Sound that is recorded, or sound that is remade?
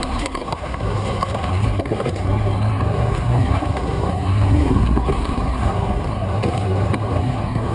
remade